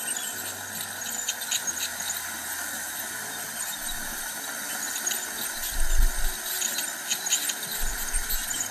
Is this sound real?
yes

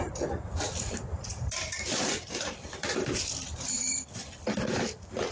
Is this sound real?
no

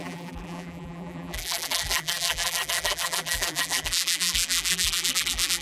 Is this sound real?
no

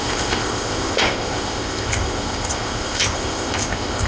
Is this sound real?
no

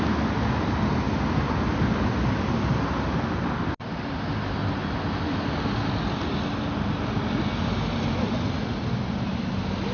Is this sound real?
yes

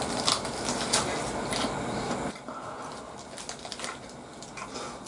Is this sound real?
yes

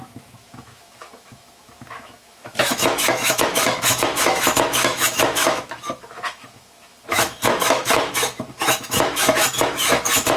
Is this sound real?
no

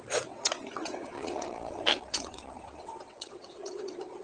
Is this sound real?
no